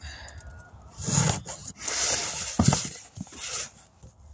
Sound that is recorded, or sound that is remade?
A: recorded